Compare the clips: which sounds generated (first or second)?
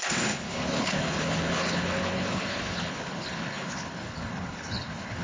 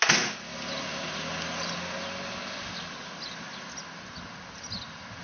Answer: first